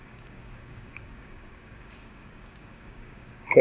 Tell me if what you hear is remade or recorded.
remade